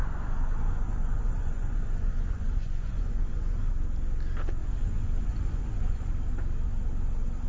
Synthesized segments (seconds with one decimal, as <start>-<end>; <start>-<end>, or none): 0.0-3.7; 4.6-6.1